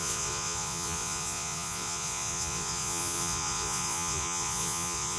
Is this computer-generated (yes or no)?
yes